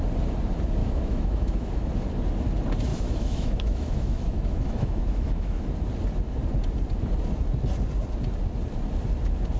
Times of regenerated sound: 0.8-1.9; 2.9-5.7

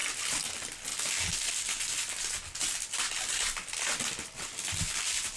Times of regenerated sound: none